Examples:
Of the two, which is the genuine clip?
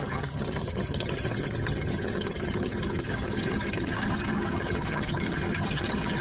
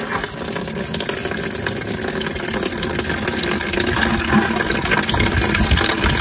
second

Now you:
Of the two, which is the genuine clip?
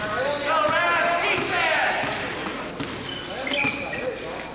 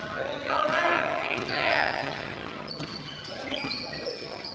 first